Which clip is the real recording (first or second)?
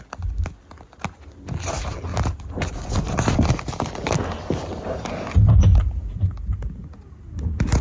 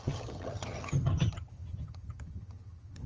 first